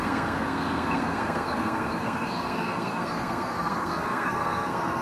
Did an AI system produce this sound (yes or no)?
yes